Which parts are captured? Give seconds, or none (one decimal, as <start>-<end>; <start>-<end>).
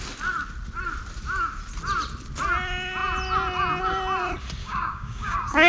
0.0-4.6